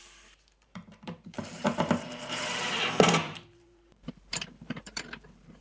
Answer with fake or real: fake